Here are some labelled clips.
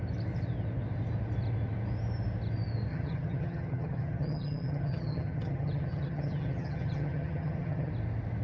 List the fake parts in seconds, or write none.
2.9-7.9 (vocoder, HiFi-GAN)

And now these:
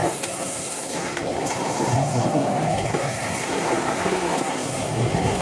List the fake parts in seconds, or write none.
0.0-5.4 (codec, SNAC)

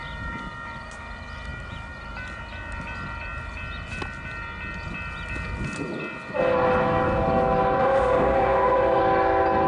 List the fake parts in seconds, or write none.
7.8-9.0 (autoencoder, DAC-VAE)

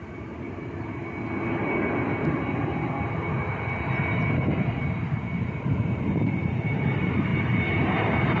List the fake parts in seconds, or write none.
0.0-1.0 (vocoder, BigVGAN v2); 4.7-8.4

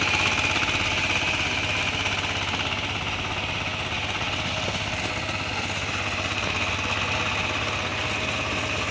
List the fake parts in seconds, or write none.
none

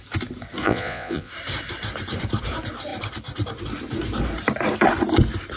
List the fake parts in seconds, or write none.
0.6-1.3 (vocoder, Vocos)

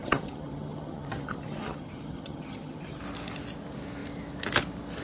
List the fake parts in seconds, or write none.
0.0-3.0 (vocoder, HiFi-GAN)

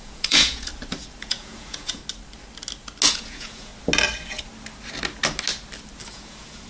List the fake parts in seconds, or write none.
0.0-0.7 (vocoder, Vocos); 1.2-2.0; 3.1-3.7; 6.1-6.7